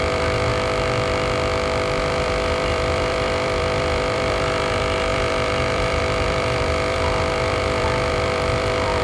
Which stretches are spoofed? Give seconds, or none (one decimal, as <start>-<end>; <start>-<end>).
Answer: 0.0-0.5; 2.0-9.0